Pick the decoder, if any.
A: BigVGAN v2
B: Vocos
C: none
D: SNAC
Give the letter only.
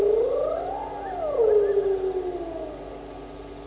C